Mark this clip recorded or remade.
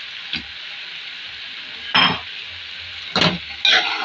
recorded